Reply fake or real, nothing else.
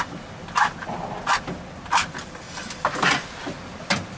real